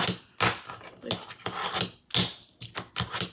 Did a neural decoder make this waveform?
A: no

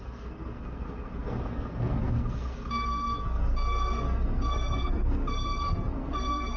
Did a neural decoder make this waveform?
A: yes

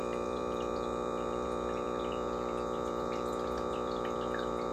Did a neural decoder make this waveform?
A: yes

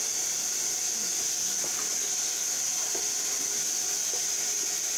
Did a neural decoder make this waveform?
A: no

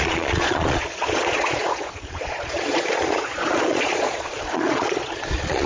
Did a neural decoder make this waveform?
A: yes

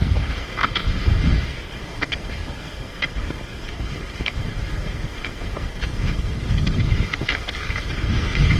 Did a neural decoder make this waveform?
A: yes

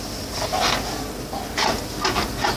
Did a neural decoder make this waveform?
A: no